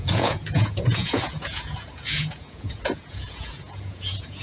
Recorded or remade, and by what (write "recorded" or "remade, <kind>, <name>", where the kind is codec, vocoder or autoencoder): remade, vocoder, Vocos